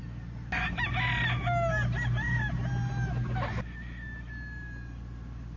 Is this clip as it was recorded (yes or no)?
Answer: yes